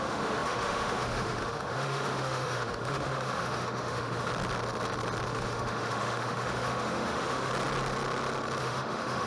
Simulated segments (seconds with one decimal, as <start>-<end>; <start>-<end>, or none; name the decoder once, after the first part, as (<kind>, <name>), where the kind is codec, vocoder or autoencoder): 0.0-4.3 (autoencoder, DAC-VAE); 5.3-7.5; 8.6-9.3